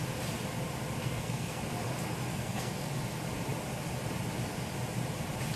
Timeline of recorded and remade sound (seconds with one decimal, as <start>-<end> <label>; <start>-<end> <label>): 0.0-1.0 recorded; 1.0-1.6 remade; 1.6-2.3 recorded; 2.3-2.9 remade; 2.9-5.6 recorded